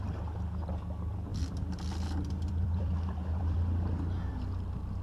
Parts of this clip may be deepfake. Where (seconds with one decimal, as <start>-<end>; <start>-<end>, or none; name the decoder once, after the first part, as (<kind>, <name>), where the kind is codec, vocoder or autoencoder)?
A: 1.3-4.3 (vocoder, BigVGAN v2)